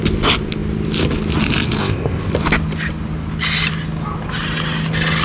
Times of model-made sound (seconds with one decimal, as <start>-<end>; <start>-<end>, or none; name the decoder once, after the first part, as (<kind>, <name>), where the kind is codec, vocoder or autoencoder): 1.8-2.3 (codec, ZipCodec)

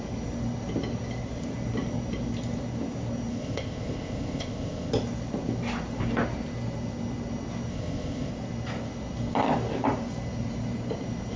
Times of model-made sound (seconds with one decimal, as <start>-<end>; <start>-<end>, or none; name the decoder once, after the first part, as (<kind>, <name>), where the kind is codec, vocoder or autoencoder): 3.3-4.9 (codec, ZipCodec); 7.7-8.3

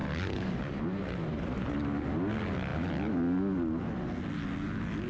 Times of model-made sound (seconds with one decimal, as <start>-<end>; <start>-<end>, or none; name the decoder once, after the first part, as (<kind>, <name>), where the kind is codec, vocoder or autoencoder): none

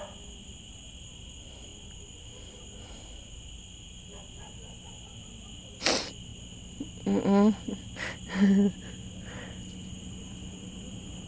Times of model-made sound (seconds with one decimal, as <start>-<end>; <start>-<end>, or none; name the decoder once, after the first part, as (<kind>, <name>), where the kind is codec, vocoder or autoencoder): none

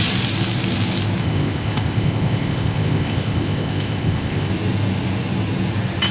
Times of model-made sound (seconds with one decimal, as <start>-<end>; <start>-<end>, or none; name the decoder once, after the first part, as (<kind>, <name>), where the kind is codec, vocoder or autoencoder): 1.2-4.5 (codec, ZipCodec)

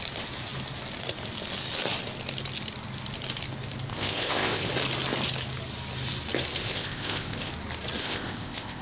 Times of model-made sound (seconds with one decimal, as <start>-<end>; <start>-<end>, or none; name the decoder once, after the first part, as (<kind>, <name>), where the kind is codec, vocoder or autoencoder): 3.9-4.7 (codec, ZipCodec); 6.6-7.5; 8.0-8.8

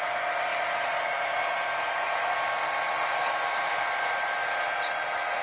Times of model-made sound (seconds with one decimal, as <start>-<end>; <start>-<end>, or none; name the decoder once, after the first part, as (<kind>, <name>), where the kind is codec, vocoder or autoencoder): none

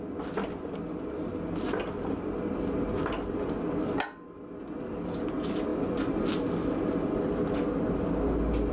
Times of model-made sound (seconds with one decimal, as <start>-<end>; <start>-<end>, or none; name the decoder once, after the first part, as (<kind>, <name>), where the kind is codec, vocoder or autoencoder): none